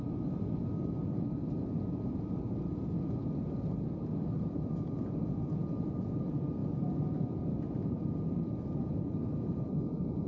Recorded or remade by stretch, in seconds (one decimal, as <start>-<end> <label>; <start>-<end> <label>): 0.0-10.3 recorded